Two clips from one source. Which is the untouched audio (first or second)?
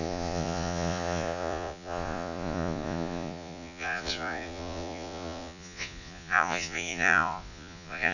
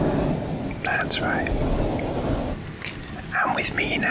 second